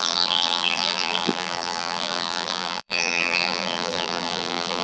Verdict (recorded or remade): remade